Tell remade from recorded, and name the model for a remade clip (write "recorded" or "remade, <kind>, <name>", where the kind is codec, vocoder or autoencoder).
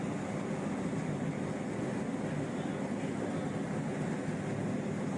recorded